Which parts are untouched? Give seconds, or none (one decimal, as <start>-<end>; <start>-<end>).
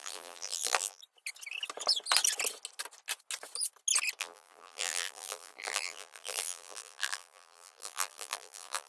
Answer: 1.0-4.2